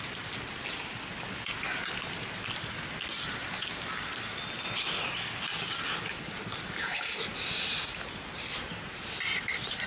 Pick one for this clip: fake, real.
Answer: real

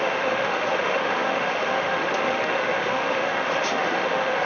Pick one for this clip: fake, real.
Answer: fake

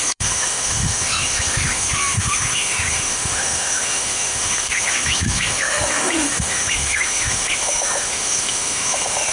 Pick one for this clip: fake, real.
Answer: fake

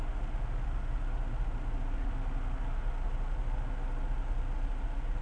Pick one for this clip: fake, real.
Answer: real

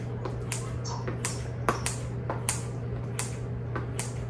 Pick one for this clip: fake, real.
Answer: real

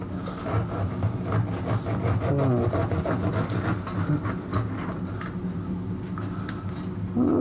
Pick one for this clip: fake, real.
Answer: real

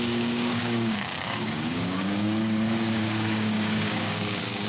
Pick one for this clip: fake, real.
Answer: fake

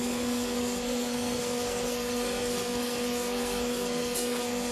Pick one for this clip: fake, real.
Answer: fake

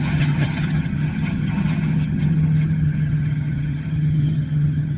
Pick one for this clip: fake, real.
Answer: fake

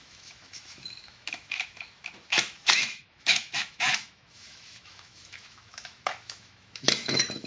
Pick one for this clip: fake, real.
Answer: fake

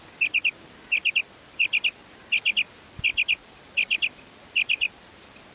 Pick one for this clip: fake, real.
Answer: real